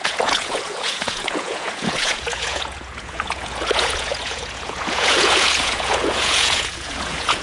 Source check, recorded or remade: remade